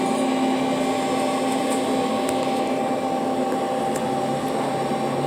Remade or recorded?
recorded